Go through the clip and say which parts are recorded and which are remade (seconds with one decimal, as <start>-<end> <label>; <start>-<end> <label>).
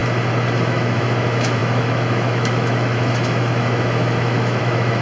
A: 0.0-0.6 recorded; 0.6-5.0 remade